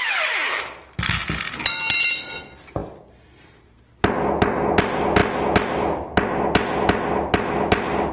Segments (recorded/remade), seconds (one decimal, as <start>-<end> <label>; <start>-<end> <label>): 0.0-8.1 recorded